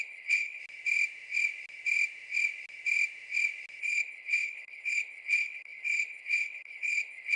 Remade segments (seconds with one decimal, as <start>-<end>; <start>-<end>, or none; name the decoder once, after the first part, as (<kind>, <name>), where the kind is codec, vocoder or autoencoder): 0.0-0.6 (codec, HILCodec); 3.8-7.4